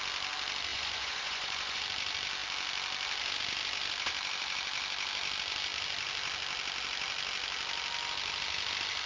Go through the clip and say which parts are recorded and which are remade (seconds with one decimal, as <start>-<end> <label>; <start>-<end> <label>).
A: 0.0-0.7 recorded; 0.7-1.8 remade; 1.8-9.1 recorded